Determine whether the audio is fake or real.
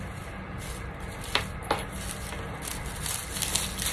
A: real